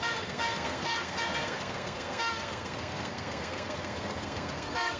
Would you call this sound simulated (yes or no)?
yes